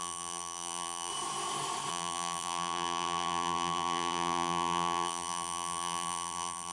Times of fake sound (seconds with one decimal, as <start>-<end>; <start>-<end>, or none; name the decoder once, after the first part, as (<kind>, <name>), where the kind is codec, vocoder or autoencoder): 0.0-1.1 (vocoder, BigVGAN v2); 1.9-6.7